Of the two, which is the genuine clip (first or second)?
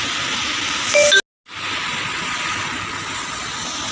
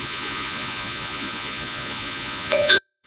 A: first